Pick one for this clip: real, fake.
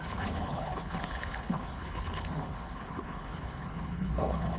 fake